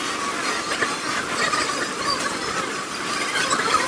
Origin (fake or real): real